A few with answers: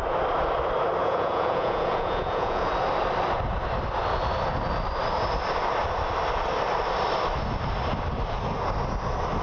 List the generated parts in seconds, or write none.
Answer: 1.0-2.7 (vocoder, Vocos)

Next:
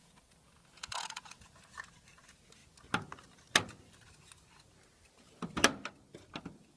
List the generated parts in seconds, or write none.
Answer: 0.0-1.6 (vocoder, Vocos)

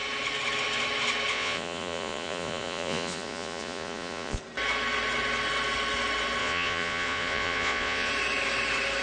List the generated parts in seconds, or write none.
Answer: 1.3-4.4 (vocoder, Vocos); 6.4-8.1